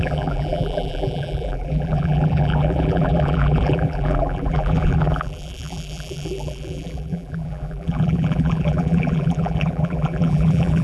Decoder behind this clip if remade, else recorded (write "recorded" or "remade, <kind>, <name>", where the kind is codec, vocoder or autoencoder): remade, vocoder, BigVGAN v2